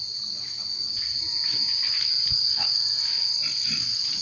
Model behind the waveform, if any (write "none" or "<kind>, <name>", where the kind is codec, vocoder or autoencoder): none